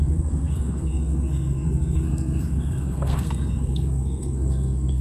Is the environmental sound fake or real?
fake